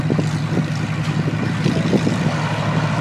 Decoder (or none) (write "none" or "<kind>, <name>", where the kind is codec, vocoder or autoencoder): none